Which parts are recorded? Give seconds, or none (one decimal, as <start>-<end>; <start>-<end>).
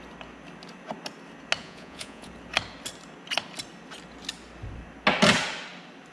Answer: 0.0-1.6; 2.3-6.1